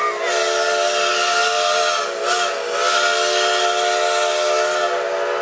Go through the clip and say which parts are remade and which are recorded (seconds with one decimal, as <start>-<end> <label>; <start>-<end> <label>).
0.0-5.4 recorded